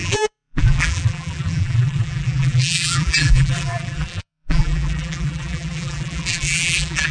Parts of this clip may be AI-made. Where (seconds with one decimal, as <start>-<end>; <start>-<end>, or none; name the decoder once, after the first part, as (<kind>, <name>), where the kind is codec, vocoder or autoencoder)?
0.0-7.1 (vocoder, BigVGAN v2)